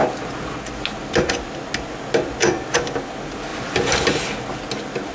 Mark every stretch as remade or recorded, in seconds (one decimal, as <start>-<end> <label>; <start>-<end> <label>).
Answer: 0.0-5.1 recorded